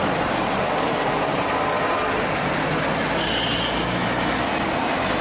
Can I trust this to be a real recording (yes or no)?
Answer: yes